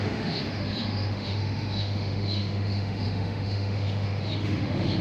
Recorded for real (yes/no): no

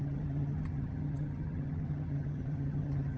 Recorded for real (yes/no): no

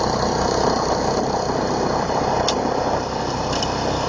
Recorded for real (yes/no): yes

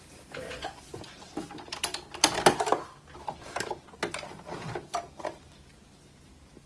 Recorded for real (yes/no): no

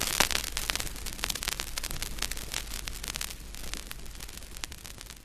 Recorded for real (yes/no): yes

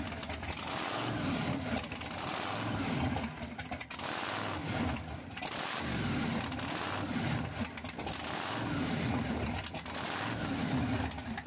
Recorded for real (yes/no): yes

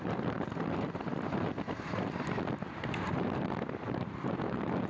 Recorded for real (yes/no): no